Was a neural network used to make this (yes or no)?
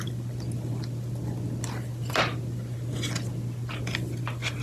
no